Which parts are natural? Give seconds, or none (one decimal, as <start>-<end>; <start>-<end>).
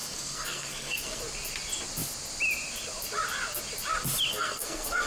1.2-4.3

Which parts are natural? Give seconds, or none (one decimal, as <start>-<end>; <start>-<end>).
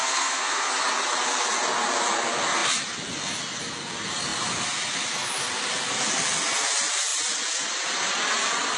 0.7-8.8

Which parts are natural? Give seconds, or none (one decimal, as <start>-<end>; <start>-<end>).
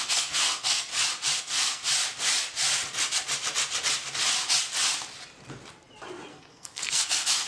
0.9-1.4; 1.8-6.3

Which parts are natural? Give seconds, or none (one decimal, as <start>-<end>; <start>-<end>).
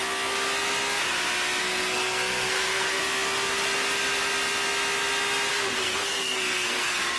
0.0-1.6; 3.0-5.5